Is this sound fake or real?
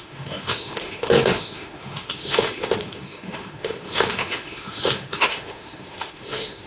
fake